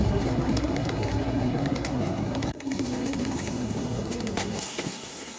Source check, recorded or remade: remade